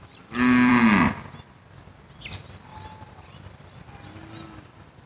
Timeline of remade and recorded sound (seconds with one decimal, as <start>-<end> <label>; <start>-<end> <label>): 0.0-5.1 recorded